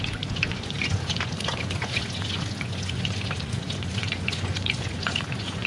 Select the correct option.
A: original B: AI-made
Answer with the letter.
B